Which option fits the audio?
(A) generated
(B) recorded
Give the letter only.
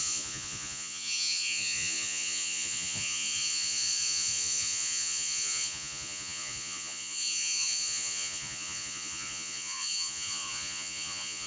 A